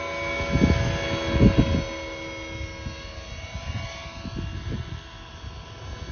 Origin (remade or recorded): recorded